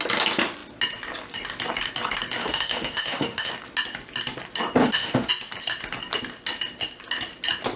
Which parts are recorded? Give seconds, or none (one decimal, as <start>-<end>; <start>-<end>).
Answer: 0.0-2.4; 3.5-4.8; 5.3-7.8